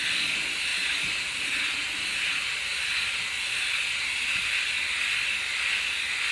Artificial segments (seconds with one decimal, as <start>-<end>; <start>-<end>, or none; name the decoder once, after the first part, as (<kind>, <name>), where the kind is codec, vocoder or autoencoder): 0.7-4.5 (vocoder, BigVGAN v2)